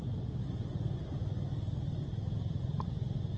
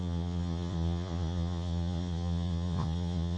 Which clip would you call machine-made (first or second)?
second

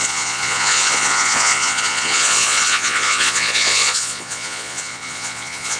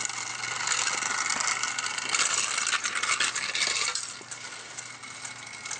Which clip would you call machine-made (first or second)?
first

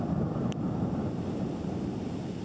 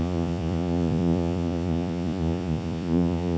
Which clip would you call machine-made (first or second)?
second